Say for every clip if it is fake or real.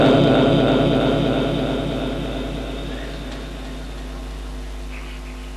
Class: real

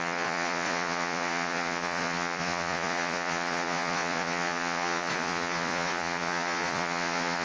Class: fake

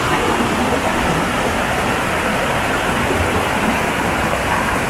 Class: real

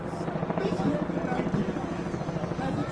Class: real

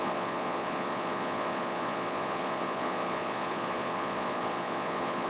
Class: fake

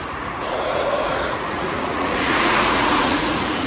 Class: fake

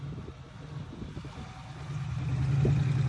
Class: real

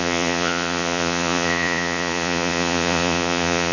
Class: fake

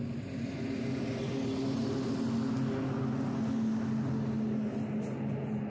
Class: real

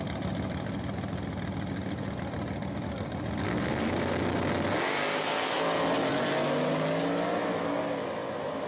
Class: real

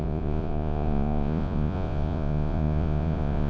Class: fake